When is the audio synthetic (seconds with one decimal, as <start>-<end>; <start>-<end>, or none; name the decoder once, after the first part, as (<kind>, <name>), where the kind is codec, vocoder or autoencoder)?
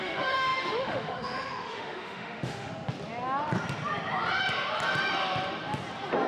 0.0-2.7 (autoencoder, DAC-VAE)